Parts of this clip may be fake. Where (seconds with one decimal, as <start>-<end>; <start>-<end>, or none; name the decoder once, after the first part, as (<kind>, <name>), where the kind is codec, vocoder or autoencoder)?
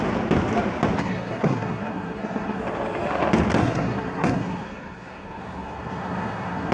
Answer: 1.0-2.6 (codec, SNAC); 3.6-6.7